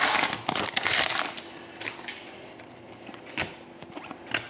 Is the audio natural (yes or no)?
no